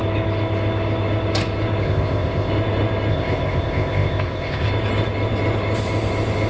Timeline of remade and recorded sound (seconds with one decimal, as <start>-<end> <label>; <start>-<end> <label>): 0.0-1.8 recorded; 1.8-2.5 remade; 2.5-3.1 recorded; 3.1-4.7 remade; 4.7-6.5 recorded